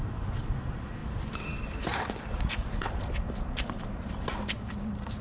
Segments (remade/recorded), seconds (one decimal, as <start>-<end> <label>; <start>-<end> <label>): 0.0-5.2 remade